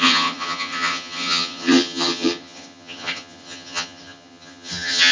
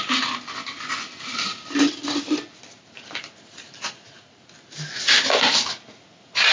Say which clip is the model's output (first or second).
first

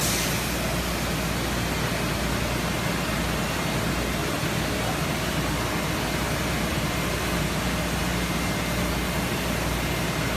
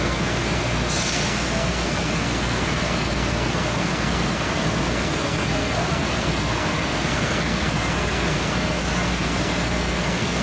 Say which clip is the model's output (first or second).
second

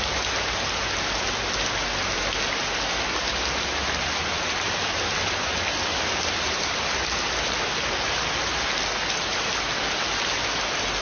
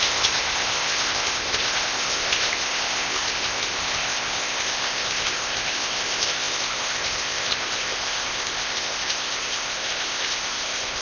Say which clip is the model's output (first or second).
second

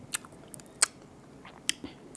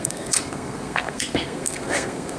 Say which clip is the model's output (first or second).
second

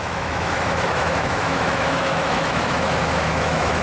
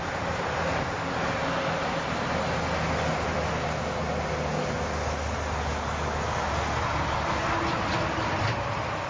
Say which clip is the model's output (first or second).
first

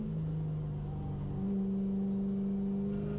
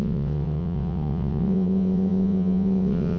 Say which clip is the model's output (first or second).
second